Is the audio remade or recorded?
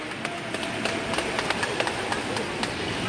recorded